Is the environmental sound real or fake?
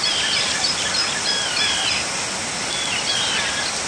real